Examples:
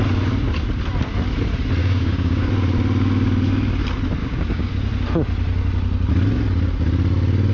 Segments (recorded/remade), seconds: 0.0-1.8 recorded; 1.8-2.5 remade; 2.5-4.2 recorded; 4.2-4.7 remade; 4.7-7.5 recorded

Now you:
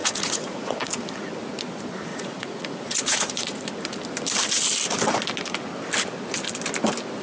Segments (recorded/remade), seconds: 0.0-1.0 remade; 1.0-2.1 recorded; 2.1-3.7 remade; 3.7-7.2 recorded

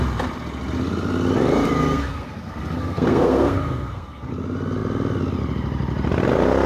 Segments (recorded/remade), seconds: 0.0-1.8 recorded; 1.8-4.3 remade; 4.3-6.7 recorded